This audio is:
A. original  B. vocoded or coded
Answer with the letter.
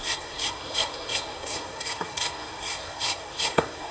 B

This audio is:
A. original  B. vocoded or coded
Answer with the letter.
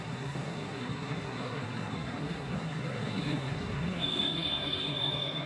B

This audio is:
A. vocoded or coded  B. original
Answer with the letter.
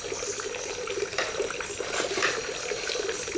B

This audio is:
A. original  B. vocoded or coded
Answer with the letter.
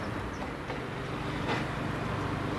A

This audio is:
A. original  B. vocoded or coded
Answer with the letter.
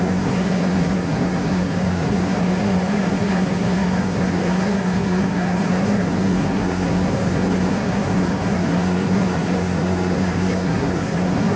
B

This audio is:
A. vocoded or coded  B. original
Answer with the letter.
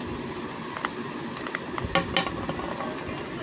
B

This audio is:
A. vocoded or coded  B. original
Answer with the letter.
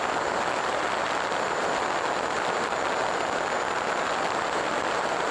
B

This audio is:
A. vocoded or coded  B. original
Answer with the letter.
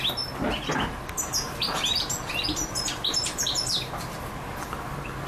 B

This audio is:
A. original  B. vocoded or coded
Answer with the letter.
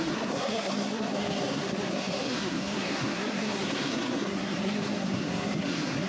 B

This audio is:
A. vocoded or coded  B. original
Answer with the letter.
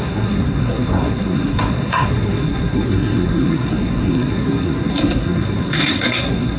A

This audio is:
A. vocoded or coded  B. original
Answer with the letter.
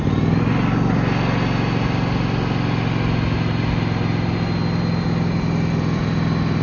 B